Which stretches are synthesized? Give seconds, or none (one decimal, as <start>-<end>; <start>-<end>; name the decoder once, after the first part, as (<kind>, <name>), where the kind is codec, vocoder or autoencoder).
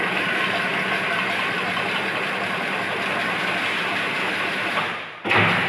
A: none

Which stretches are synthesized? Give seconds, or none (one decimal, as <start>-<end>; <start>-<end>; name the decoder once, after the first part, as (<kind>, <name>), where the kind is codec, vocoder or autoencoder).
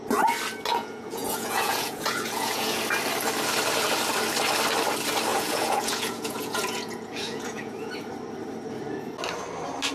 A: 0.7-2.8 (vocoder, Vocos); 5.3-7.9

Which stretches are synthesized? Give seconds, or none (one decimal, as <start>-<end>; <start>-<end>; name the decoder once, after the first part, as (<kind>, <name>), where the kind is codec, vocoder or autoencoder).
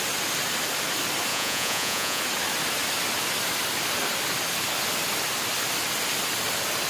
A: 1.3-2.2 (vocoder, Vocos)